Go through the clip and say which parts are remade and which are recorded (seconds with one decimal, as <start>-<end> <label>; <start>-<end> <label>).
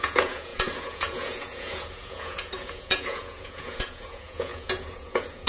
0.0-5.5 remade